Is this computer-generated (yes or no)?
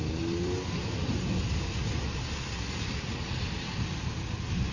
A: no